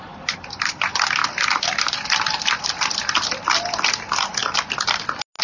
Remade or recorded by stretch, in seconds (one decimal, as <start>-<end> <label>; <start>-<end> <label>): 0.0-5.4 recorded